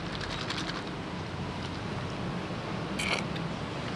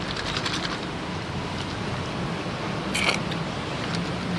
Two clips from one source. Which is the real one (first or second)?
first